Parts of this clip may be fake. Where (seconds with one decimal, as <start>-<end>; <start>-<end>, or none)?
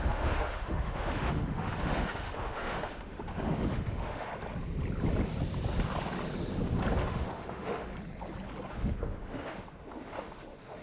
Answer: 0.0-4.3; 7.0-7.9; 8.7-10.8